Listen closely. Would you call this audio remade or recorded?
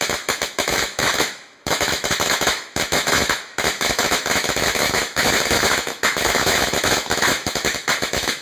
remade